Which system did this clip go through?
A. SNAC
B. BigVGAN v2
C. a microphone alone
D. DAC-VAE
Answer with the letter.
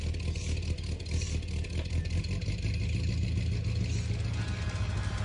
C